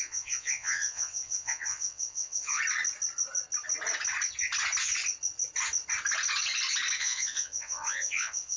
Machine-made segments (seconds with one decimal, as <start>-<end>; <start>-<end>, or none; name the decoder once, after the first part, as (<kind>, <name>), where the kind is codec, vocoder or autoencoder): 0.0-2.6 (vocoder, WaveNeXt); 7.0-8.6